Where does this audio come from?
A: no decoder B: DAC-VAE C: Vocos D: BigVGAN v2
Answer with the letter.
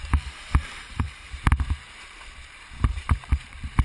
D